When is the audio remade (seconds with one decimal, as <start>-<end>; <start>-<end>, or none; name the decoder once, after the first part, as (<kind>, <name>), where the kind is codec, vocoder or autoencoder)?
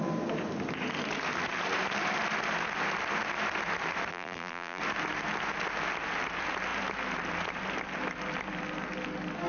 4.1-4.8 (vocoder, BigVGAN v2)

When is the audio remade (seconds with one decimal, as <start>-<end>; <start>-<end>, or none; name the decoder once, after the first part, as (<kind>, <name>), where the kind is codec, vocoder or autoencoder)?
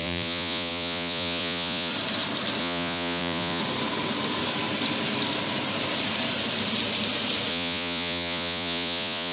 0.0-1.9 (vocoder, Vocos); 2.6-3.6; 7.5-9.3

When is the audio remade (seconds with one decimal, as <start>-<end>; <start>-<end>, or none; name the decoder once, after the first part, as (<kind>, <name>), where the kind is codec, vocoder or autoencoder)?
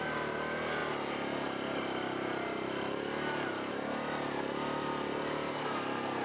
none